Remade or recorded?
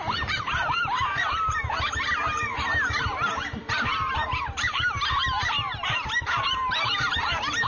remade